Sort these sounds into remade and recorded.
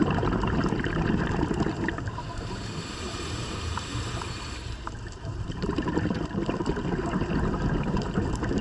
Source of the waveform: remade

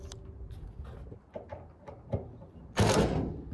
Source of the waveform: recorded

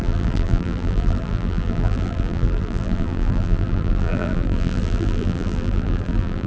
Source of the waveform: remade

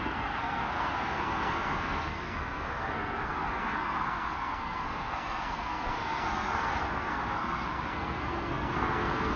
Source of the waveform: remade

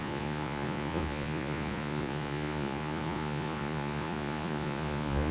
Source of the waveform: remade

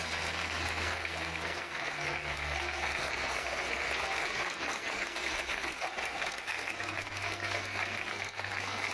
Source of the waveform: remade